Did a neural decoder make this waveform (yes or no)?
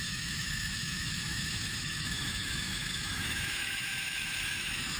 yes